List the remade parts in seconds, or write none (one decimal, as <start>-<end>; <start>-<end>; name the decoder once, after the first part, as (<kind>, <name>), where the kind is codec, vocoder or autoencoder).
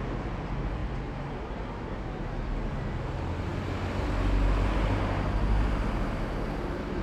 none